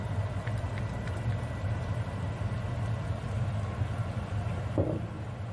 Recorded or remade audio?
recorded